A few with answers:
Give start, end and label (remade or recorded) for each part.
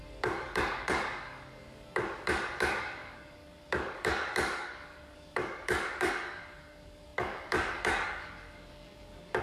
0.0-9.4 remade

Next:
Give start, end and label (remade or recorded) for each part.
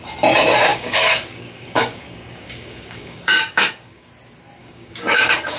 0.0-0.7 recorded; 0.7-4.1 remade; 4.1-4.6 recorded; 4.6-5.6 remade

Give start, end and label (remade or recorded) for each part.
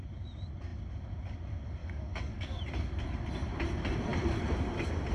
0.0-1.8 recorded; 1.8-2.6 remade; 2.6-5.1 recorded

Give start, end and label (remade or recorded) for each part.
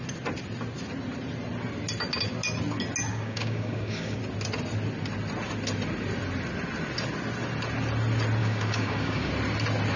0.0-3.1 recorded; 3.1-4.2 remade; 4.2-8.4 recorded; 8.4-9.3 remade; 9.3-10.0 recorded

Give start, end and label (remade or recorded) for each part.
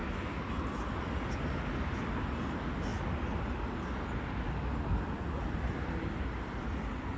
0.0-7.2 recorded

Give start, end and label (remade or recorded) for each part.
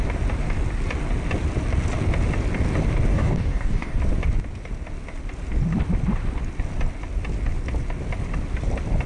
0.0-3.1 recorded; 3.1-4.0 remade; 4.0-9.1 recorded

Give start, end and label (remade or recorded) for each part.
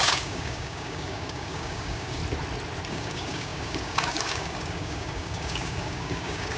0.0-2.2 remade; 2.2-2.9 recorded; 2.9-6.6 remade